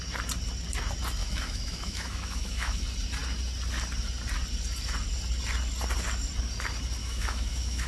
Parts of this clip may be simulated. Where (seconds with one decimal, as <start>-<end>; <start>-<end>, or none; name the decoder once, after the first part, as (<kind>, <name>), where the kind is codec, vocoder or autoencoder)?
1.2-2.8 (autoencoder, DAC-VAE); 7.0-7.9